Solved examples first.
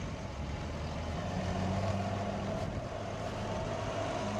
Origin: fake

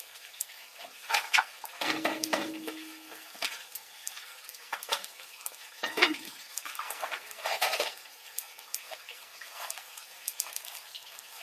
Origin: fake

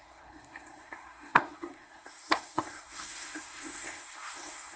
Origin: fake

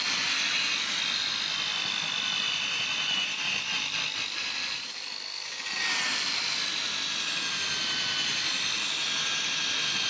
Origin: real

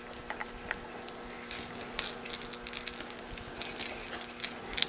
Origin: real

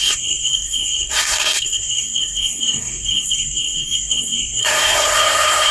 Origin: fake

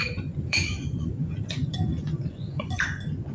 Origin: fake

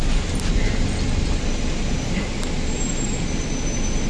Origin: real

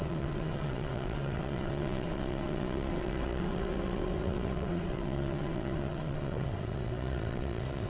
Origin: fake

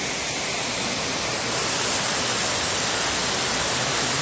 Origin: real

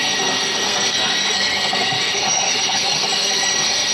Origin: fake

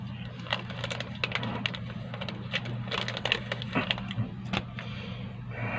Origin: real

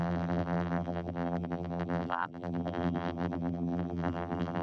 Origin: fake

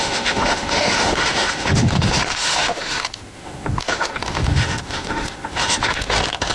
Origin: fake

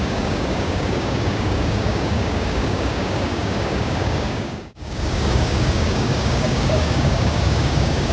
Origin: fake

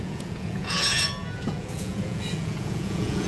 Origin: fake